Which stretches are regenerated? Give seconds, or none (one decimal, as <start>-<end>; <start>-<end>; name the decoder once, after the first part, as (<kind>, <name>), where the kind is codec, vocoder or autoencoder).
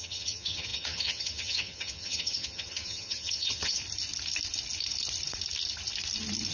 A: 0.0-3.8 (vocoder, HiFi-GAN)